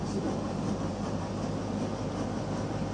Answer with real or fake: fake